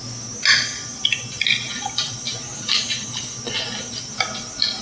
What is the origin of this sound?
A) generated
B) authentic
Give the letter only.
B